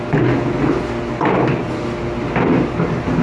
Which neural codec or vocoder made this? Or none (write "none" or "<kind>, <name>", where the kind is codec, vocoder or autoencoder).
none